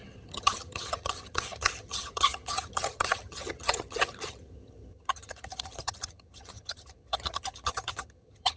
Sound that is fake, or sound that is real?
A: fake